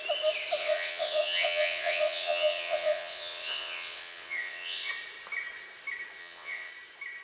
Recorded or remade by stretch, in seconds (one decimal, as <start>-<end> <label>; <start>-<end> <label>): 0.0-0.6 recorded; 0.6-4.9 remade; 4.9-6.2 recorded; 6.2-6.7 remade; 6.7-7.2 recorded